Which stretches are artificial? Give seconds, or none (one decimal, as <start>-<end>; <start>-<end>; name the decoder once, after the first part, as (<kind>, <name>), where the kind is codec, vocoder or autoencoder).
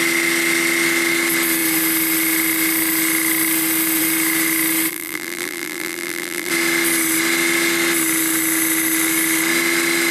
4.9-6.5 (vocoder, BigVGAN v2)